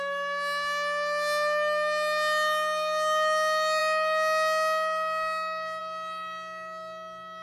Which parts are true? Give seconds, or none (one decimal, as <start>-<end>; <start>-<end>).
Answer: 0.0-7.4